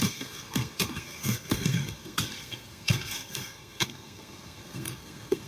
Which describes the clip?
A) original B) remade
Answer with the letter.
B